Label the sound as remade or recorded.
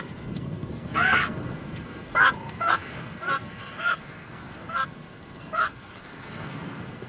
remade